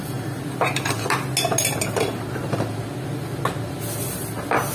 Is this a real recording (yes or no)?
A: yes